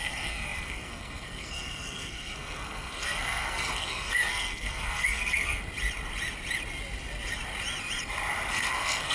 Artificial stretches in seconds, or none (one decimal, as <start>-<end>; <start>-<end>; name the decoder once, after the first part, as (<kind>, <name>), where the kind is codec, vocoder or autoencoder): 0.0-5.6 (codec, SNAC); 8.5-9.1